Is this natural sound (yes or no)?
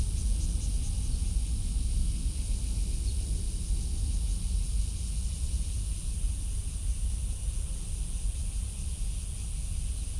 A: yes